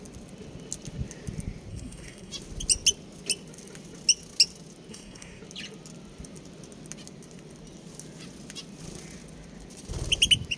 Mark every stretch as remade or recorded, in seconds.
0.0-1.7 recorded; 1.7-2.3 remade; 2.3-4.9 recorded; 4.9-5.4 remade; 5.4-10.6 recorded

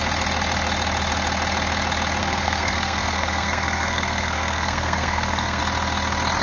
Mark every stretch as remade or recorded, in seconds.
0.0-2.2 recorded; 2.2-5.6 remade; 5.6-6.4 recorded

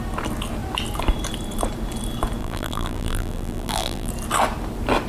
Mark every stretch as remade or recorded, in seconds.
0.0-2.4 recorded; 2.4-4.1 remade; 4.1-5.1 recorded

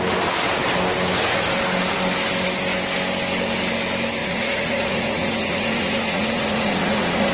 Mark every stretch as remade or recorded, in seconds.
0.0-4.2 recorded; 4.2-7.3 remade

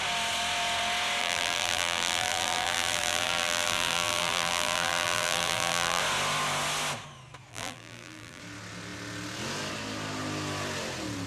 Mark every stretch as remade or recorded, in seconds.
0.0-1.2 recorded; 1.2-6.0 remade; 6.0-7.5 recorded; 7.5-8.4 remade; 8.4-11.3 recorded

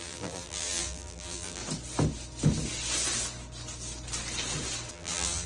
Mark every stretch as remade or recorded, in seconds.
0.0-1.6 remade; 1.6-4.9 recorded; 4.9-5.5 remade